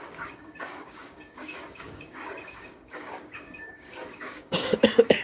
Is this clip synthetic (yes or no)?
yes